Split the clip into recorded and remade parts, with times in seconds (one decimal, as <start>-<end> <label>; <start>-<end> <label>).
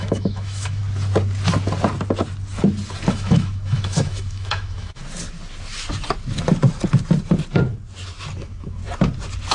0.0-0.8 remade; 0.8-3.1 recorded; 3.1-5.0 remade; 5.0-8.4 recorded; 8.4-8.8 remade; 8.8-9.5 recorded